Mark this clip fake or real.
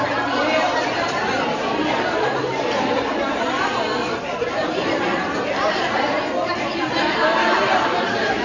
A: fake